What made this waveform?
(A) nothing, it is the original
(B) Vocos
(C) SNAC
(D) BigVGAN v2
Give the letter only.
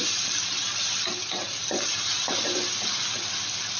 A